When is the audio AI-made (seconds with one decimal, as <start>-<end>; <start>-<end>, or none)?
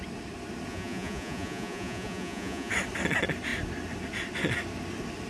0.7-2.7